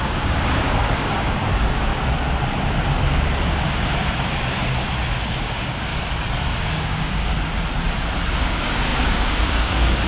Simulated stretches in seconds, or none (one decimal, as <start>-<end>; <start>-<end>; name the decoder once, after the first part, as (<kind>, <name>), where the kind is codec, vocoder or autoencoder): 0.0-1.9 (codec, DAC); 5.2-5.9; 6.6-7.3; 8.3-10.1